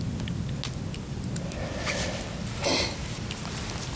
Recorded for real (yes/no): yes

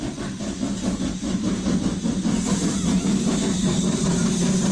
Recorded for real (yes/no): yes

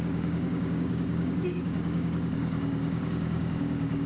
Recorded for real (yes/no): no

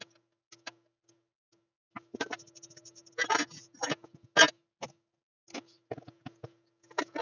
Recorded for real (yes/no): yes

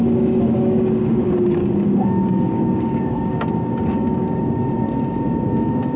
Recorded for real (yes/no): no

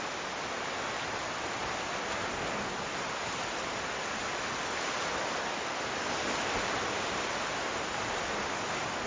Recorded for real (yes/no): yes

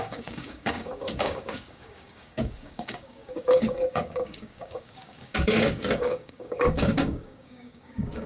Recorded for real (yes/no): no